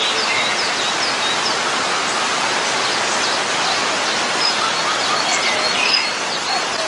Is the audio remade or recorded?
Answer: recorded